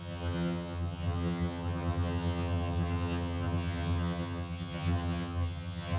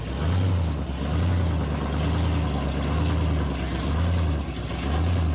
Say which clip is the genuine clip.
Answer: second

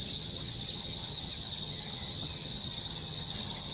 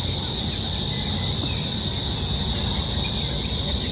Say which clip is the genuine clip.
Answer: second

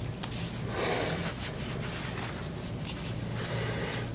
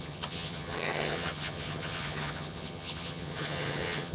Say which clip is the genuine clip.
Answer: first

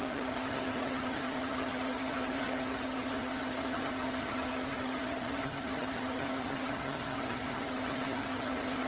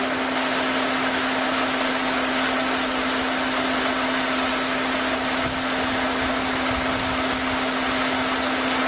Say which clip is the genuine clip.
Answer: second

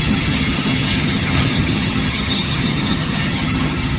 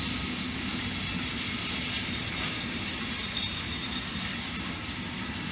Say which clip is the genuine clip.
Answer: second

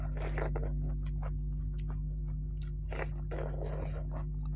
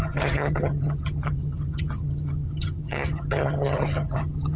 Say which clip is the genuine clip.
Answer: first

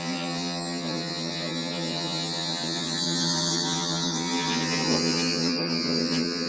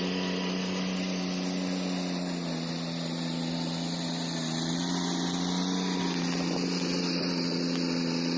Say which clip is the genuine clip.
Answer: second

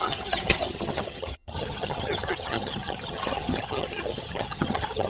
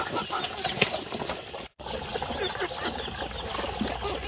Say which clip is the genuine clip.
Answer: second